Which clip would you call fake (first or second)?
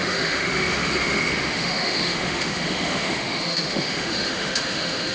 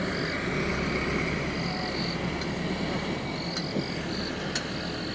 first